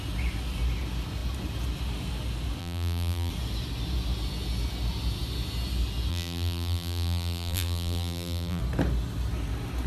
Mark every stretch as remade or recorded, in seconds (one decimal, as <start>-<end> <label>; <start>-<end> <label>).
0.0-2.6 recorded; 2.6-3.3 remade; 3.3-6.1 recorded; 6.1-8.6 remade; 8.6-9.9 recorded